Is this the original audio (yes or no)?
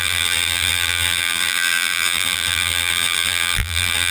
no